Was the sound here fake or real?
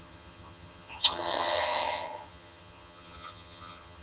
fake